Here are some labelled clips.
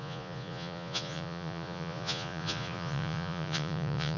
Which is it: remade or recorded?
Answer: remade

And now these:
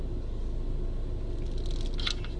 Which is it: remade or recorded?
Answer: recorded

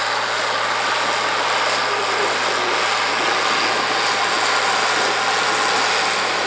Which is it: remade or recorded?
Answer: recorded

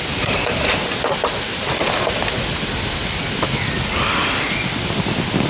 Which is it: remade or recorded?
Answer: recorded